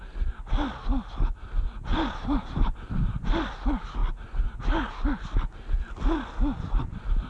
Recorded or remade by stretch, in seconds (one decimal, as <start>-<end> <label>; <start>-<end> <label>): 0.0-1.9 recorded; 1.9-3.3 remade; 3.3-7.3 recorded